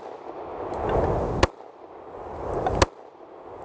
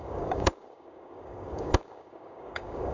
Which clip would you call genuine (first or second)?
first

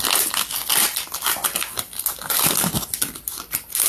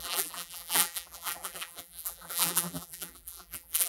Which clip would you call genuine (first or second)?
first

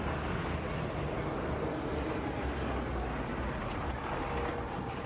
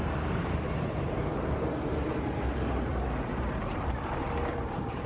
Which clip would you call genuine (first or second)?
first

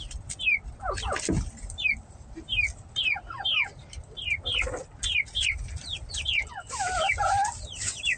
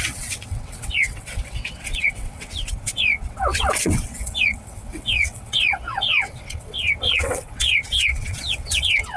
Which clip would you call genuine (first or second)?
first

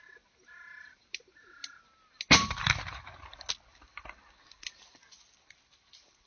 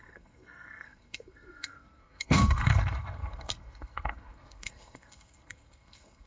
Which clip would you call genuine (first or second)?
first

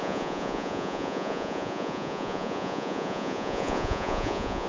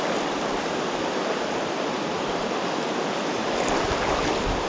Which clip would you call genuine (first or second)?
second